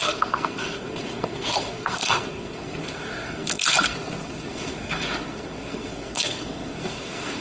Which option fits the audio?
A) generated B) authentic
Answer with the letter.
A